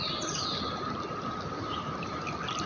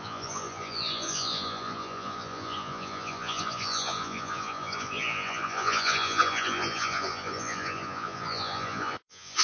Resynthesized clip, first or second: second